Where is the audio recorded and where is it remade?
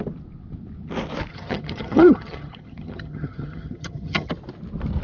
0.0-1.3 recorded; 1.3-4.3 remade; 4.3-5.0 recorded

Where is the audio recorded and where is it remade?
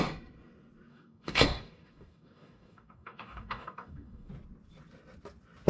0.0-0.9 recorded; 0.9-4.3 remade; 4.3-5.7 recorded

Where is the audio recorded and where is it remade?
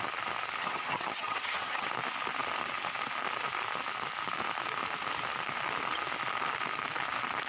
0.0-0.6 recorded; 0.6-1.9 remade; 1.9-7.5 recorded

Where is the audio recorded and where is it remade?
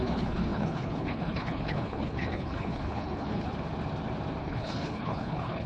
0.0-3.5 remade; 3.5-4.4 recorded; 4.4-5.7 remade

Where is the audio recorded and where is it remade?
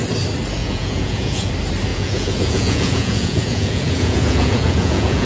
0.0-0.6 recorded; 0.6-1.5 remade; 1.5-1.9 recorded; 1.9-5.3 remade